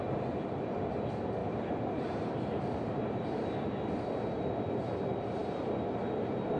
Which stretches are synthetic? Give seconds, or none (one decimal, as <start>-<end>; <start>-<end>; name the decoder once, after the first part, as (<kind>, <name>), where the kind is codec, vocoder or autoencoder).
1.4-3.2 (vocoder, BigVGAN v2)

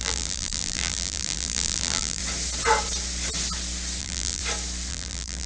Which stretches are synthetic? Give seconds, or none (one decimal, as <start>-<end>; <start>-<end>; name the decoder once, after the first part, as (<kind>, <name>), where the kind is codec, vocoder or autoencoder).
0.0-2.2 (vocoder, BigVGAN v2); 4.0-4.4; 4.9-5.5

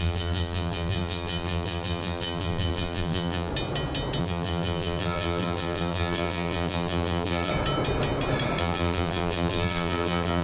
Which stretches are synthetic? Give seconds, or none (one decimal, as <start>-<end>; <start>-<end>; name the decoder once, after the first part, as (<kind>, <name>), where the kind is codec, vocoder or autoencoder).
0.0-3.5 (vocoder, BigVGAN v2); 4.2-7.5; 8.6-10.4

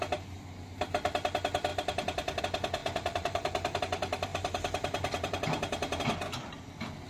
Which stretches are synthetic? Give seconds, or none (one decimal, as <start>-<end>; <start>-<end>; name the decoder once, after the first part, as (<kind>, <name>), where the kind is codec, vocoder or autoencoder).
1.7-2.4 (vocoder, BigVGAN v2); 2.8-3.8; 4.3-6.0

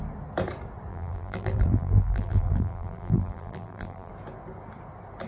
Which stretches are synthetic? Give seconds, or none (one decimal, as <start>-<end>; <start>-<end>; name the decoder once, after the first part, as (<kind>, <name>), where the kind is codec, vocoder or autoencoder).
0.9-4.1 (vocoder, BigVGAN v2)